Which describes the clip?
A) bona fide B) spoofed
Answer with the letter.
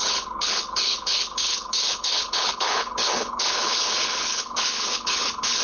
B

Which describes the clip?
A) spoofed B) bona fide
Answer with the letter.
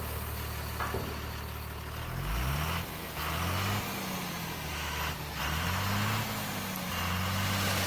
B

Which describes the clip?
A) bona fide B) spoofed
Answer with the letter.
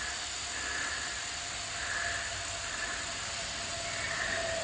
A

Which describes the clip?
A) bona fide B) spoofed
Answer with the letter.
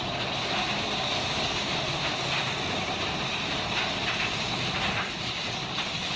A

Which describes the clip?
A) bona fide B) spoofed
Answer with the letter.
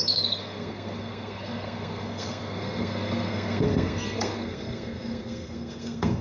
B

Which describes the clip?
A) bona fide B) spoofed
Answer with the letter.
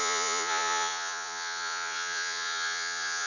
B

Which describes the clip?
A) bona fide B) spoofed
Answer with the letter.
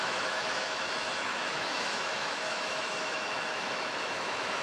B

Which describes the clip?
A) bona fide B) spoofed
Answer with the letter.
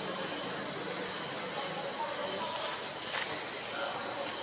A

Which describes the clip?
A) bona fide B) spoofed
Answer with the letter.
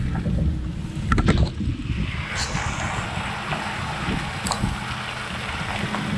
A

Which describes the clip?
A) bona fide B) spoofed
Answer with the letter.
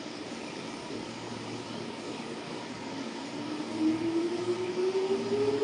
B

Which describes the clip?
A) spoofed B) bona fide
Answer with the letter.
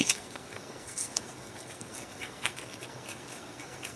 A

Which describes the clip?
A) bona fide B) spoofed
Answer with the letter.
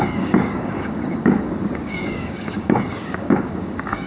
B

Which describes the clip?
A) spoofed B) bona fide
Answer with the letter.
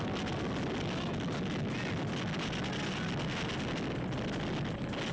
B